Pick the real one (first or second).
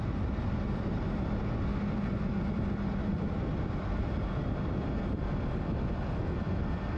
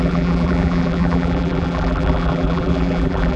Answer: first